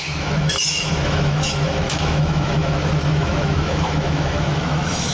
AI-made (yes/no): yes